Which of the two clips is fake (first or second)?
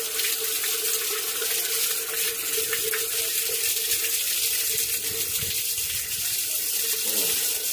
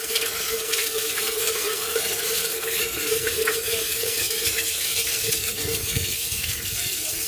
second